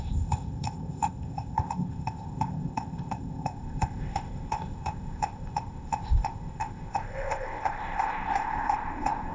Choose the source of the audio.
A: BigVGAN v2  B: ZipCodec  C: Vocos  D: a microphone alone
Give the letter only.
B